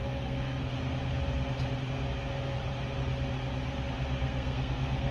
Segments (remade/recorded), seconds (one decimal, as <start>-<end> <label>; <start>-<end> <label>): 0.0-0.7 remade; 0.7-4.2 recorded; 4.2-5.1 remade